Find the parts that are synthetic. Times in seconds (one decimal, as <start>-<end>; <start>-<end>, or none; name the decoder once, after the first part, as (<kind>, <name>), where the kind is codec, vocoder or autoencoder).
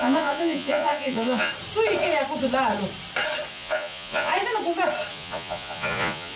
0.0-1.5 (vocoder, Vocos); 3.5-4.3; 5.1-6.4